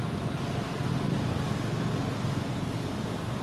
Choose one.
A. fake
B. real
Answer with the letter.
B